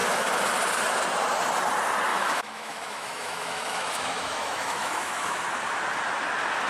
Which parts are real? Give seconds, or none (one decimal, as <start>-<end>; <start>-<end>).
0.0-2.1; 5.4-6.7